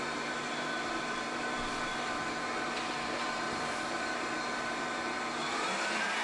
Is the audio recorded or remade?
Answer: remade